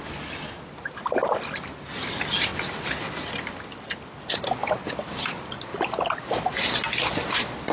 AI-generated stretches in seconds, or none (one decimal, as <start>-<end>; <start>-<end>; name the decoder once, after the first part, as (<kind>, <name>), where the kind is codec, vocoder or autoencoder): none